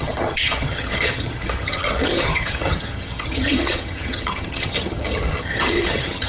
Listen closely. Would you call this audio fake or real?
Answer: fake